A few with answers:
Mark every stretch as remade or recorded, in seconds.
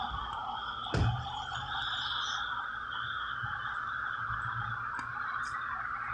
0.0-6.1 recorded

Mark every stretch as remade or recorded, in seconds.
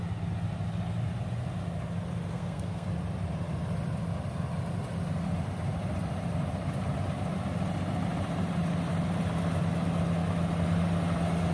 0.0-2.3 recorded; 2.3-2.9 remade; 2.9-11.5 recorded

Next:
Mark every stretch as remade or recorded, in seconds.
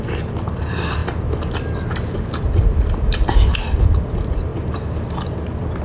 0.0-1.0 remade; 1.0-3.9 recorded; 3.9-4.5 remade; 4.5-5.8 recorded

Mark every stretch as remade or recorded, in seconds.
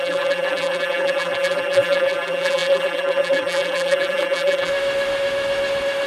0.0-4.7 remade; 4.7-6.1 recorded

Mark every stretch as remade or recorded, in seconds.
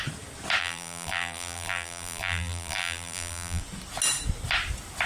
0.0-0.6 recorded; 0.6-3.6 remade; 3.6-5.1 recorded